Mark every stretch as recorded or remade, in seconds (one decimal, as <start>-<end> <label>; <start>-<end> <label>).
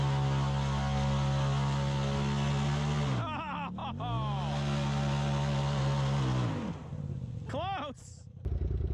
0.0-8.9 recorded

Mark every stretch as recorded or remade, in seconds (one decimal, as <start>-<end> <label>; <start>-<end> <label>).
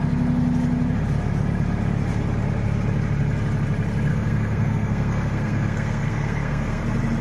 0.0-4.1 recorded; 4.1-6.8 remade; 6.8-7.2 recorded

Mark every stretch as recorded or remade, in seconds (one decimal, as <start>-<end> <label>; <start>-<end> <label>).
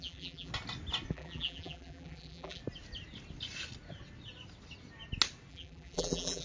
0.0-0.5 remade; 0.5-1.1 recorded; 1.1-2.6 remade; 2.6-5.5 recorded; 5.5-6.4 remade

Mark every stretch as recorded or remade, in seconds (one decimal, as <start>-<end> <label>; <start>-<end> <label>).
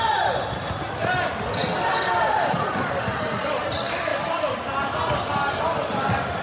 0.0-6.4 recorded